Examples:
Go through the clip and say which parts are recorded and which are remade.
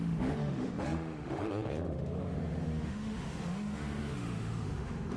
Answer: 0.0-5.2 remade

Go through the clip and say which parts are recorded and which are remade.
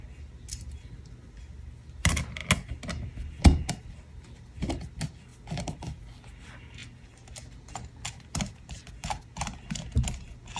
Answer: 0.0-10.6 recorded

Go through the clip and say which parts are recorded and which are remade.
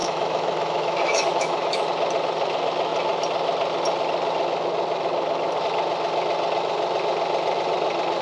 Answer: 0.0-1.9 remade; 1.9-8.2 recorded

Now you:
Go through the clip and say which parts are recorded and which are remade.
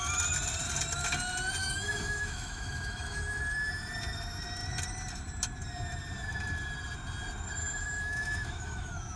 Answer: 0.0-1.6 recorded; 1.6-3.4 remade; 3.4-7.6 recorded; 7.6-9.2 remade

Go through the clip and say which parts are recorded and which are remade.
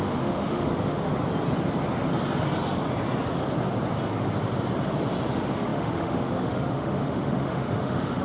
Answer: 0.0-1.1 remade; 1.1-5.3 recorded; 5.3-8.2 remade